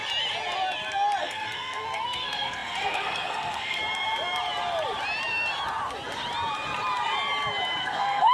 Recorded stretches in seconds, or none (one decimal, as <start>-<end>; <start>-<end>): 0.0-1.2; 3.8-7.8